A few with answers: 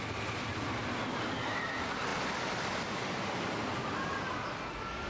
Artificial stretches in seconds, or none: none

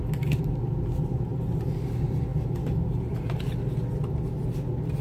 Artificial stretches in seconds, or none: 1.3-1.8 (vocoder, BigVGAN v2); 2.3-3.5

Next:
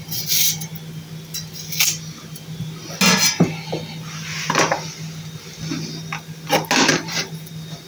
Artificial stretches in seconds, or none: 6.9-7.5 (vocoder, BigVGAN v2)

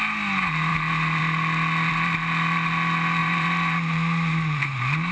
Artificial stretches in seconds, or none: 3.2-5.1 (vocoder, BigVGAN v2)

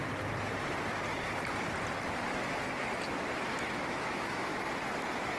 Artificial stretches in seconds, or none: 3.5-4.5 (autoencoder, DAC-VAE)

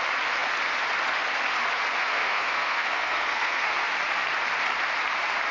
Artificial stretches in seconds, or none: 2.0-3.9 (codec, SNAC)

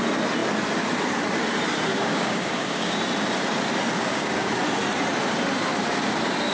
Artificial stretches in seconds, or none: 1.9-3.0 (codec, DAC); 4.0-4.6

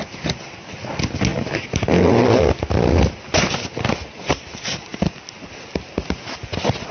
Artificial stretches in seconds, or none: none